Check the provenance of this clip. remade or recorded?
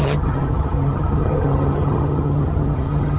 remade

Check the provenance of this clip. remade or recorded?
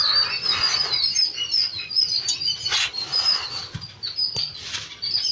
recorded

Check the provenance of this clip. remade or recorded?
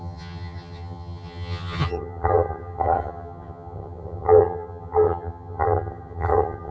remade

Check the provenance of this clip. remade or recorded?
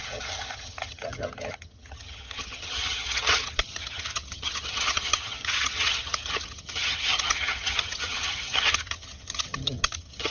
remade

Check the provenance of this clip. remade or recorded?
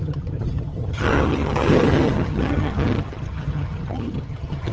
remade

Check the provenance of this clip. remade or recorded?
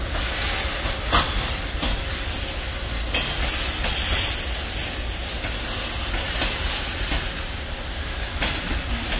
recorded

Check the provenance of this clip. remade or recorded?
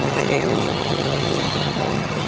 remade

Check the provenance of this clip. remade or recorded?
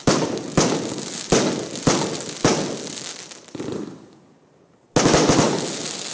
recorded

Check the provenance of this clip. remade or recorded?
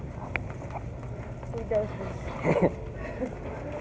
recorded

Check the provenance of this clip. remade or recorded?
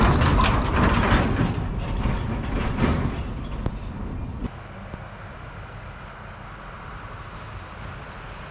recorded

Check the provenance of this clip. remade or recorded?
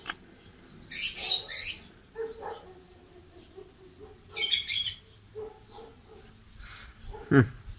recorded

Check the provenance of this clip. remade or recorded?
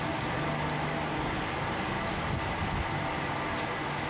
recorded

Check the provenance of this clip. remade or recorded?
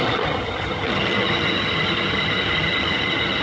remade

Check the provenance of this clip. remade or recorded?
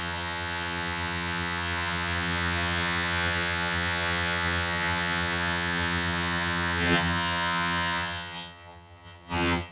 remade